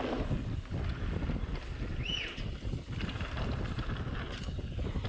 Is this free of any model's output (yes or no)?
yes